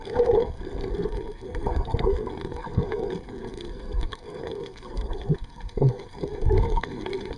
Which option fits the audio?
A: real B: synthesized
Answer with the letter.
B